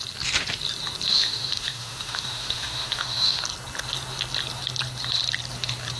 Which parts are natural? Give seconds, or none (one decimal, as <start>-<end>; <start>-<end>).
0.0-1.1; 3.4-6.0